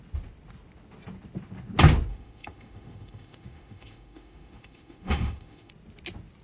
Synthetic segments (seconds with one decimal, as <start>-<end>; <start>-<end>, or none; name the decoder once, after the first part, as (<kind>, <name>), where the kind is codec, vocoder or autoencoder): 2.1-5.7 (autoencoder, DAC-VAE)